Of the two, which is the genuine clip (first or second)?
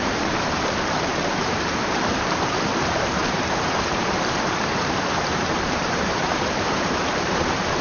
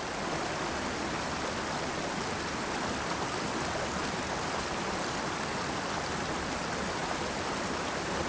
second